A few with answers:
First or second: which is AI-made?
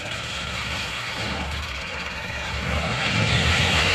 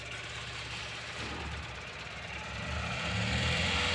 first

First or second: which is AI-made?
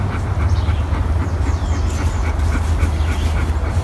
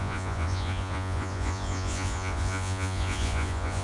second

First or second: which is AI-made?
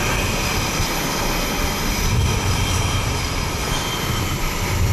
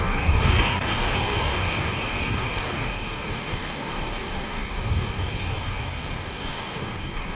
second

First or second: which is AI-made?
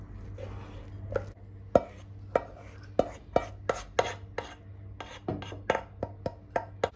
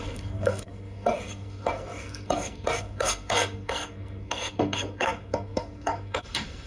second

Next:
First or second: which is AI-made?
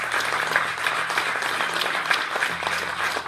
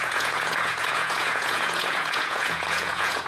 second